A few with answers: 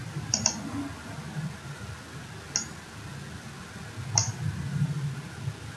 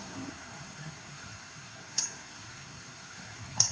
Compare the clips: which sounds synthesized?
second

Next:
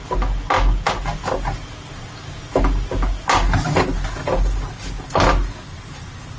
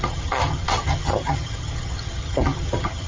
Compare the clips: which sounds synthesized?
second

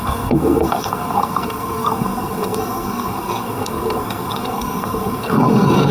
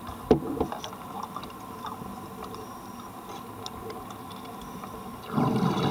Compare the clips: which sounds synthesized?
first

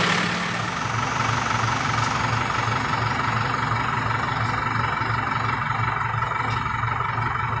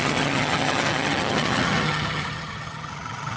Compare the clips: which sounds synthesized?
second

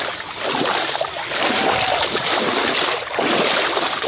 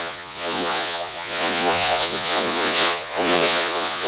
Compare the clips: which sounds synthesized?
second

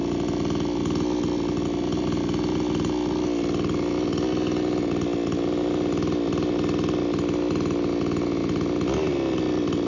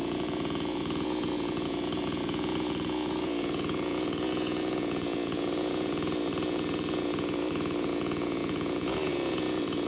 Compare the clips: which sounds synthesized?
second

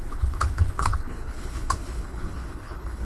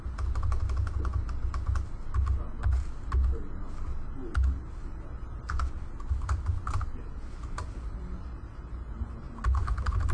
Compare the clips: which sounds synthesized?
first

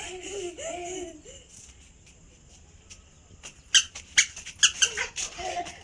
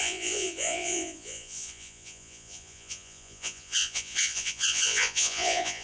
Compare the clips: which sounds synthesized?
second